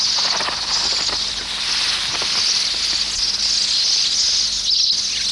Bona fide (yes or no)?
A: yes